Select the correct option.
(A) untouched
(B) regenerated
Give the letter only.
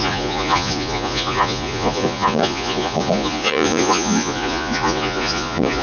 B